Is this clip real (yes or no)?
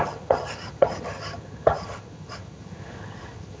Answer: no